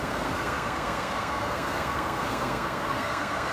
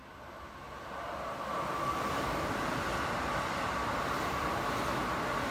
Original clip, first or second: second